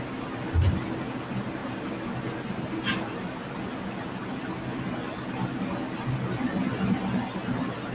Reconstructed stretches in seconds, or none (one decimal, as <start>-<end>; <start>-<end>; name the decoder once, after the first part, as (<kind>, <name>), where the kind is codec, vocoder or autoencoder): none